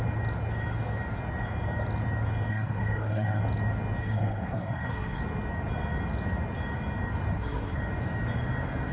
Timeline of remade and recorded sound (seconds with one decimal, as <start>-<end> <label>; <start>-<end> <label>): 0.0-2.5 recorded; 2.5-3.4 remade; 3.4-4.0 recorded; 4.0-5.2 remade; 5.2-7.3 recorded; 7.3-7.8 remade; 7.8-8.9 recorded

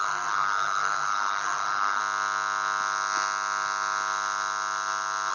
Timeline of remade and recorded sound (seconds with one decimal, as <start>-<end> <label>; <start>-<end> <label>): 0.0-2.0 remade; 2.0-5.3 recorded

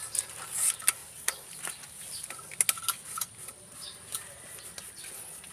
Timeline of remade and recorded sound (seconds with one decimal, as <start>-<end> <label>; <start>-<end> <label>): 0.0-5.5 recorded

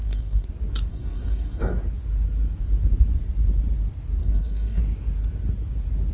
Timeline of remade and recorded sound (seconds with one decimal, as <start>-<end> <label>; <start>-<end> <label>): 0.0-0.5 remade; 0.5-0.9 recorded; 0.9-1.7 remade; 1.7-4.2 recorded; 4.2-4.8 remade; 4.8-6.1 recorded

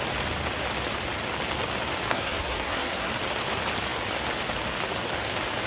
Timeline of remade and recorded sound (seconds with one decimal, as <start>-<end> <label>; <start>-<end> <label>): 0.0-2.1 recorded; 2.1-3.1 remade; 3.1-5.7 recorded